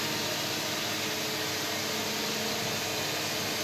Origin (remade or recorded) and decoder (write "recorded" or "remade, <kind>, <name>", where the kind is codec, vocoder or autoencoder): recorded